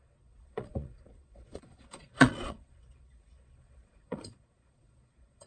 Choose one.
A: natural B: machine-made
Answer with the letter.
B